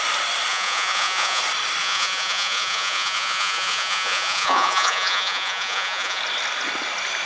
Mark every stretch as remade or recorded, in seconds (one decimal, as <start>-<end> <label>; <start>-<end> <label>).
0.0-0.5 recorded; 0.5-1.4 remade; 1.4-1.8 recorded; 1.8-6.2 remade; 6.2-7.3 recorded